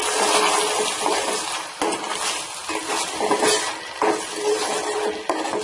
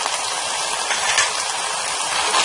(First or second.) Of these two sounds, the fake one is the second